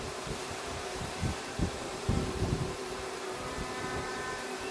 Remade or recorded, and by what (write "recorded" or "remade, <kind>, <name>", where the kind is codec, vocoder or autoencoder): remade, vocoder, BigVGAN v2